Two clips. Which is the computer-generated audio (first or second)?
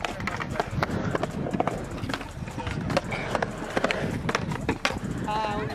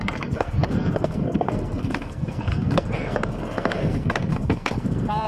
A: second